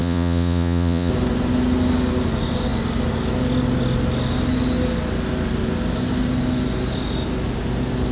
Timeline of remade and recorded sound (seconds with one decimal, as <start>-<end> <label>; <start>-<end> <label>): 0.0-1.1 remade; 1.1-8.1 recorded

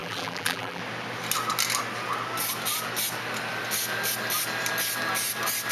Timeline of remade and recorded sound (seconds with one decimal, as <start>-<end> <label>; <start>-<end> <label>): 0.0-0.8 remade; 0.8-5.7 recorded

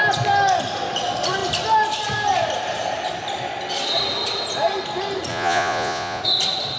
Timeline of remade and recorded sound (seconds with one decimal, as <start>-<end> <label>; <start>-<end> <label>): 0.0-5.3 recorded; 5.3-6.2 remade; 6.2-6.8 recorded

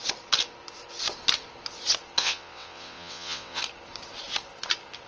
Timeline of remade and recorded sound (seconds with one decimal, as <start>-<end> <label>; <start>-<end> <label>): 0.0-2.2 recorded; 2.2-3.6 remade; 3.6-5.1 recorded

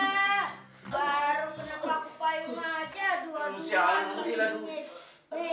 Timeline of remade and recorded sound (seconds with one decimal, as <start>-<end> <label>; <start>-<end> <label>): 0.0-5.5 recorded

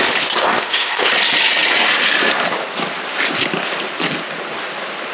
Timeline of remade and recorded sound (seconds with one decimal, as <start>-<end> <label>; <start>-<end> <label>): 0.0-0.4 recorded; 0.4-1.1 remade; 1.1-5.1 recorded

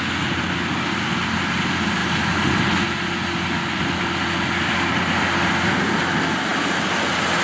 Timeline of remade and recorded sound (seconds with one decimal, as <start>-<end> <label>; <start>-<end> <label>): 0.0-7.4 recorded